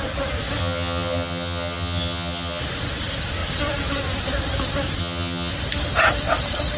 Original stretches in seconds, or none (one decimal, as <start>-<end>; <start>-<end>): 0.0-0.6; 2.6-5.0; 5.5-6.8